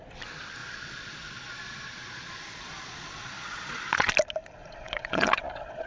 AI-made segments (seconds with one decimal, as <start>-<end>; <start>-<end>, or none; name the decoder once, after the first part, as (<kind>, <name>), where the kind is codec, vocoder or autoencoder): 0.6-4.1 (vocoder, Vocos); 4.6-5.9